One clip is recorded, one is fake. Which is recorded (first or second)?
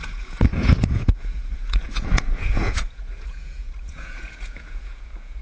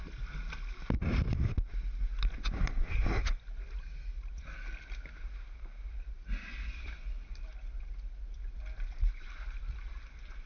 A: second